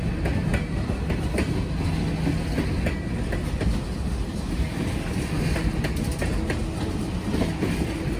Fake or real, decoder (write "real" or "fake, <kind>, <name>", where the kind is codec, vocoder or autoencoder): real